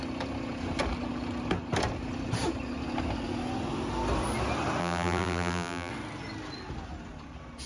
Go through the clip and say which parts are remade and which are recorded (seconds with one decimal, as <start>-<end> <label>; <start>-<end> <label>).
0.0-4.8 recorded; 4.8-5.9 remade; 5.9-7.7 recorded